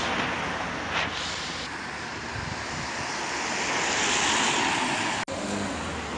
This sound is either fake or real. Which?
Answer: real